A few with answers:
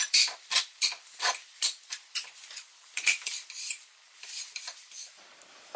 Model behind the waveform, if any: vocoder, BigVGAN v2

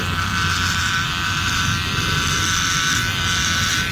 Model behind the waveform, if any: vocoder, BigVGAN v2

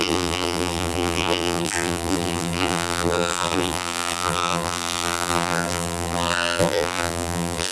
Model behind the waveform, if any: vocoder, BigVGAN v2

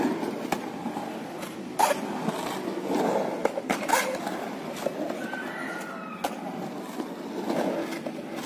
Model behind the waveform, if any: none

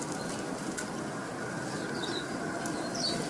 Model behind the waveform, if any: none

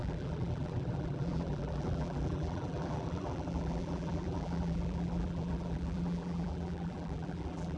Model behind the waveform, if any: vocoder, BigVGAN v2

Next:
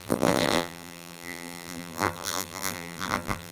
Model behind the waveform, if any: vocoder, BigVGAN v2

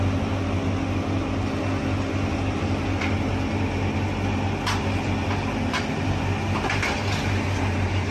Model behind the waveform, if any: none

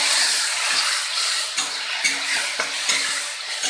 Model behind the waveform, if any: none